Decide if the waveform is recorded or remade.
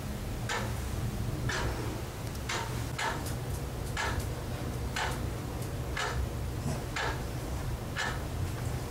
recorded